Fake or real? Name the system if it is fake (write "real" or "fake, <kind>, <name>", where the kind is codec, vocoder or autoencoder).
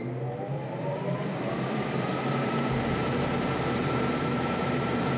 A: fake, vocoder, BigVGAN v2